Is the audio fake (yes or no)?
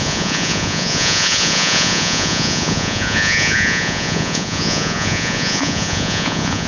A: yes